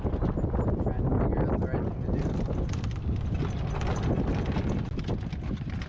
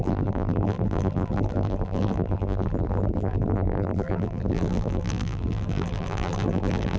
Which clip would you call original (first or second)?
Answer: first